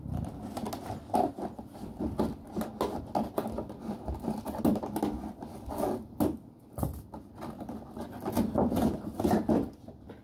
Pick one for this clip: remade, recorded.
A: recorded